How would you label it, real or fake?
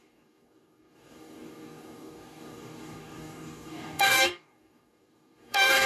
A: fake